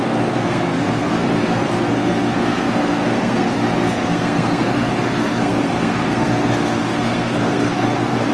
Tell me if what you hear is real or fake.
fake